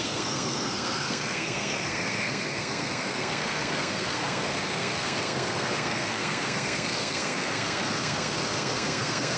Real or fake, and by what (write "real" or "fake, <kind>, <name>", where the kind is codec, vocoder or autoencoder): fake, codec, SNAC